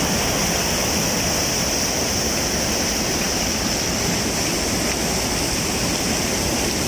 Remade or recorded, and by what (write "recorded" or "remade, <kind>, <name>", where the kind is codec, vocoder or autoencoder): recorded